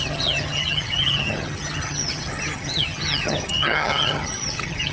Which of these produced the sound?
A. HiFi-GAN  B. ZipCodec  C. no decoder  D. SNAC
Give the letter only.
A